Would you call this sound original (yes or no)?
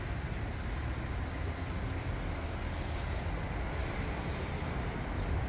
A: yes